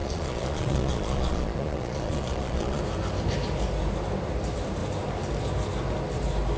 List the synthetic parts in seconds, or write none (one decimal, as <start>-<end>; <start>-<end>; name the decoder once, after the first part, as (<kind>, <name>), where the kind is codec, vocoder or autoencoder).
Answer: 0.0-2.8 (vocoder, Vocos)